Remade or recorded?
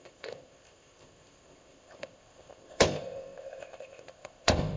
remade